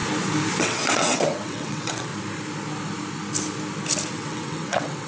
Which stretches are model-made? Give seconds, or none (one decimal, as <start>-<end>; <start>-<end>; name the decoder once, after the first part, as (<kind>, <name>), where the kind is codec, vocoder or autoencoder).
0.6-2.1 (vocoder, WaveNeXt); 4.1-5.1